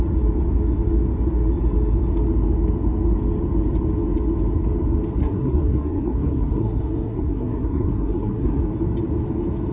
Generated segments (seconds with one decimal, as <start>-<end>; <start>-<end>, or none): 5.2-8.6